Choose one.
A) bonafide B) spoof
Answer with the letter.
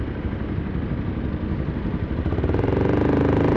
A